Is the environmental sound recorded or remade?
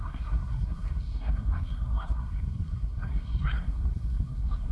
remade